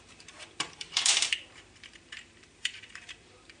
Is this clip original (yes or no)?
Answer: no